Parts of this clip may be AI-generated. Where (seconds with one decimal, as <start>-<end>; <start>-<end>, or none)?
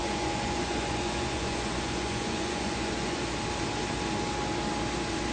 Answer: 0.0-3.2